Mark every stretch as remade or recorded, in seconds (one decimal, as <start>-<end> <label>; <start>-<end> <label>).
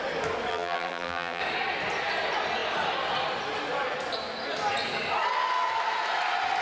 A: 0.0-0.5 recorded; 0.5-1.4 remade; 1.4-6.6 recorded